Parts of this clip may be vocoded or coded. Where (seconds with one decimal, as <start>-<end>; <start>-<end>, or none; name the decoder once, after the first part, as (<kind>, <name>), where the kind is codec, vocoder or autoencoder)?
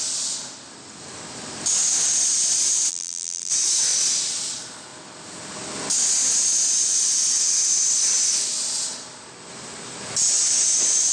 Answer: 2.9-3.5 (vocoder, BigVGAN v2)